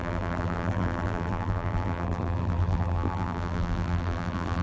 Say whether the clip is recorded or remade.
remade